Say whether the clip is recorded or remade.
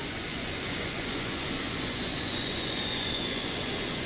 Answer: remade